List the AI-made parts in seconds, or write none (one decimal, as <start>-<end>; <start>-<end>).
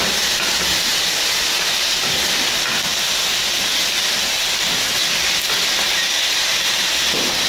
none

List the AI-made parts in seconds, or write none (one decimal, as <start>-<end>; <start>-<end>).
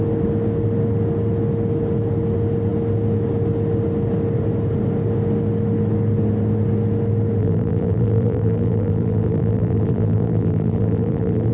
7.4-11.5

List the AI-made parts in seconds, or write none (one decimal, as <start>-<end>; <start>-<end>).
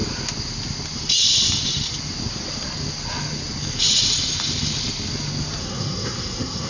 5.6-6.7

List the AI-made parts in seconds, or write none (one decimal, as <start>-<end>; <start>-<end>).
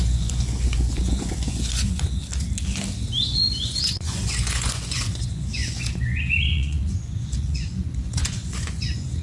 0.0-2.2; 3.2-9.2